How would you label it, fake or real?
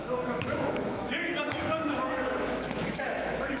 fake